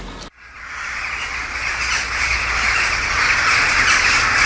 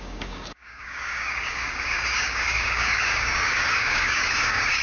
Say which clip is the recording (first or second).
first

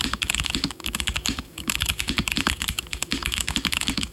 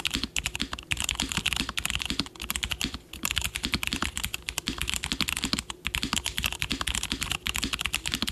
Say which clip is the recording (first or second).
second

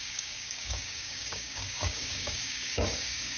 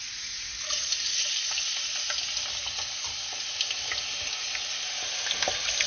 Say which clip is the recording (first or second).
second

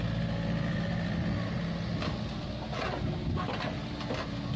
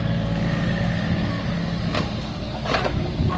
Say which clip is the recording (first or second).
first